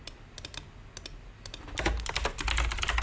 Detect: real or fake real